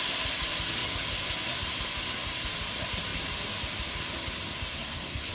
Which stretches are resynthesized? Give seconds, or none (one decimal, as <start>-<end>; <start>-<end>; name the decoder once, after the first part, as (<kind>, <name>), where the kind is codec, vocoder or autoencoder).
4.7-5.3 (codec, SNAC)